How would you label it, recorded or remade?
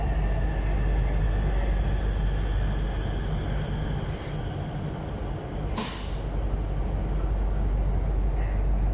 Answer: recorded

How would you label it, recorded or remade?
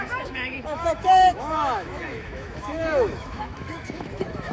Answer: remade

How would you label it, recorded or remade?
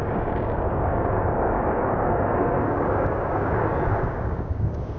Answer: remade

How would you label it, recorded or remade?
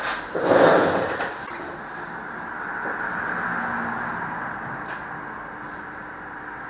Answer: recorded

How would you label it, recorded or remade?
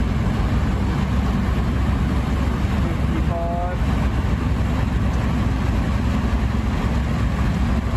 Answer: recorded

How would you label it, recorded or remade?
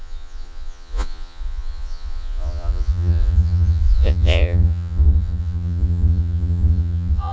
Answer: remade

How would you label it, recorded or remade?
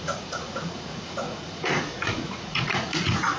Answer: remade